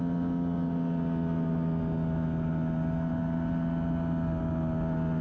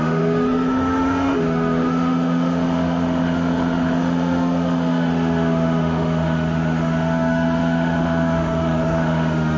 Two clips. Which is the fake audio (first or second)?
second